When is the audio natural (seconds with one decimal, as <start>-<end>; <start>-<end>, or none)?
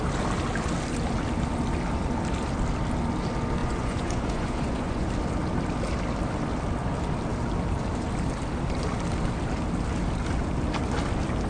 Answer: 0.0-3.6; 5.1-11.5